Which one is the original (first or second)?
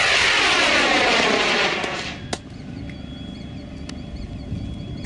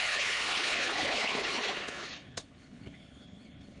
first